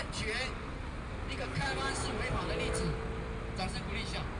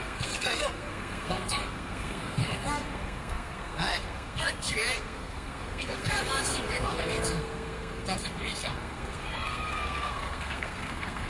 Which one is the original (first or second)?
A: first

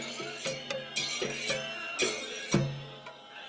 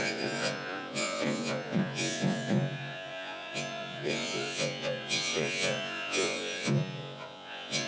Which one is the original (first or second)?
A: first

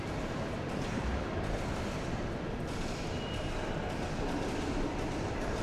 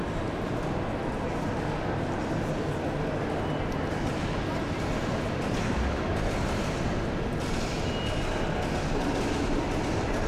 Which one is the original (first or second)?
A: second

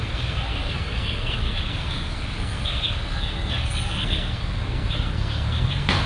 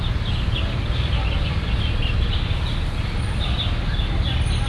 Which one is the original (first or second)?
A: second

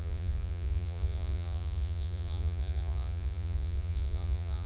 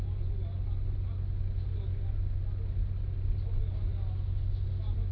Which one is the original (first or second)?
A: second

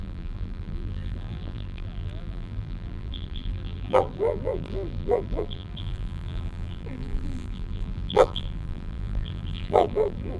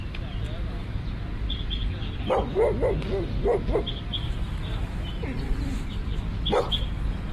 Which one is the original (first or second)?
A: second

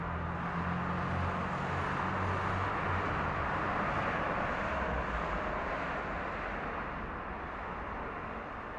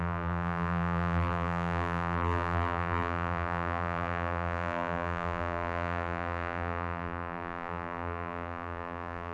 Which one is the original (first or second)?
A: first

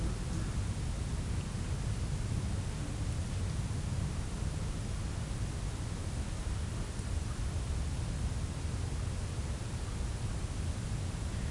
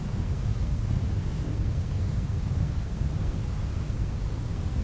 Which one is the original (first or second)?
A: first